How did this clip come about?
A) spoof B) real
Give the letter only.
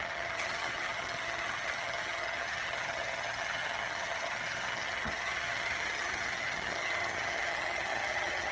A